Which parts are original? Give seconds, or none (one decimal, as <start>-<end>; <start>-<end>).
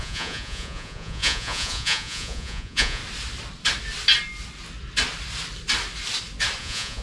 3.0-6.6